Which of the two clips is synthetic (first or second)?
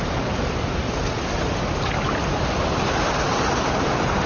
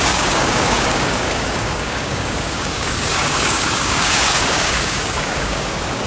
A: second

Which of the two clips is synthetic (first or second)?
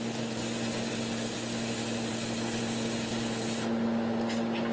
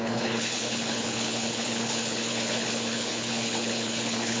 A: second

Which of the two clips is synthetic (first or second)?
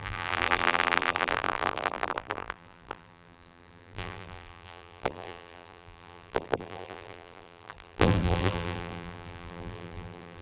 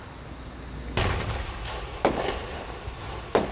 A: first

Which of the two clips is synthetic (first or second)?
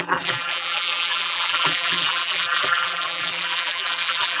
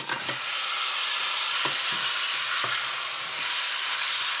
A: first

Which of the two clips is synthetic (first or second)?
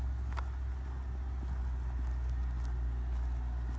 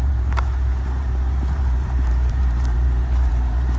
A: second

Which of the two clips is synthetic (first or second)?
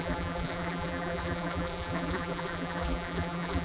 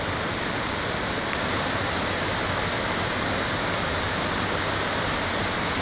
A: first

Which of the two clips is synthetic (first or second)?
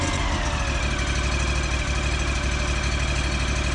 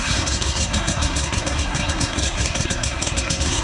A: second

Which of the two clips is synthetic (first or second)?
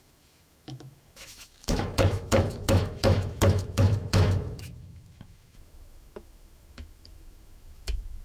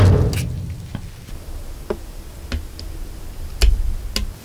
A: first